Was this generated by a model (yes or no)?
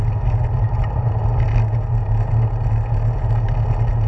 no